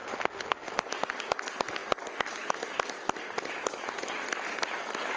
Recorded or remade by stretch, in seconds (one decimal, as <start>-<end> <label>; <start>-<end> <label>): 0.0-0.8 remade; 0.8-5.2 recorded